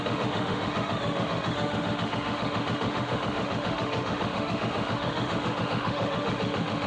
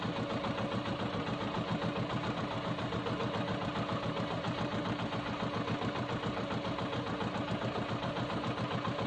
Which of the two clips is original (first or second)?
second